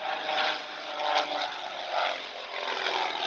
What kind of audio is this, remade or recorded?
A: recorded